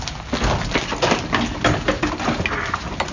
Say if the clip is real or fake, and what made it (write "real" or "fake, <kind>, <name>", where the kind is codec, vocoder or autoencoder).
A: real